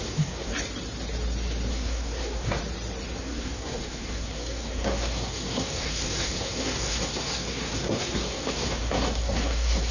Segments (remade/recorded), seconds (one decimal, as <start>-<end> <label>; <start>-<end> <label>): 0.0-0.5 remade; 0.5-1.7 recorded; 1.7-2.6 remade; 2.6-3.2 recorded; 3.2-9.9 remade